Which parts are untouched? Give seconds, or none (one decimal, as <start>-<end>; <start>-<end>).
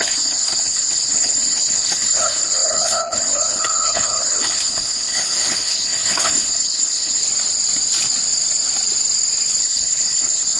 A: 7.2-9.6